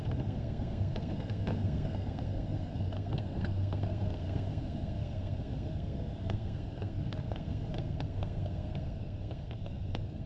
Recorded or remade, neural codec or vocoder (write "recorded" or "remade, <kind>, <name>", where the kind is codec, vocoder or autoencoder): remade, codec, SNAC